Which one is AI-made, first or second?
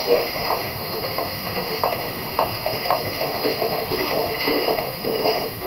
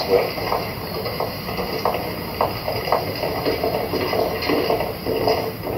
first